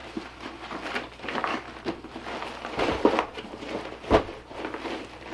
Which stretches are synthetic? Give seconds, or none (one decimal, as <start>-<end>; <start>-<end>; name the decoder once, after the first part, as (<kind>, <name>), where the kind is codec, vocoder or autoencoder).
none